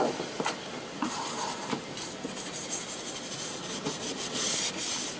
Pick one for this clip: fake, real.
real